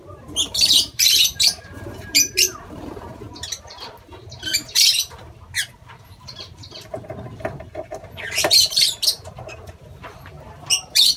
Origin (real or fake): fake